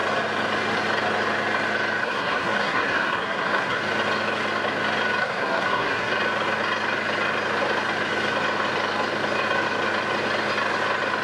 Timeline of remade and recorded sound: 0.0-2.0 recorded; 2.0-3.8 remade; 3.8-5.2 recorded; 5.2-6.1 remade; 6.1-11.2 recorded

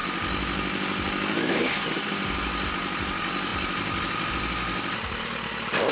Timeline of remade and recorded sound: 0.0-5.9 recorded

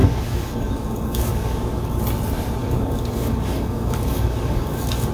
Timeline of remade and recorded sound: 0.0-2.0 remade; 2.0-2.6 recorded; 2.6-5.1 remade

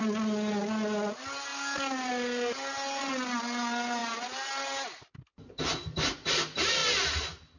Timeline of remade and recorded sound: 0.0-7.6 recorded